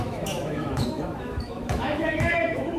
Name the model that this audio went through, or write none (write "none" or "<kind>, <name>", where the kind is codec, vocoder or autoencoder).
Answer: autoencoder, DAC-VAE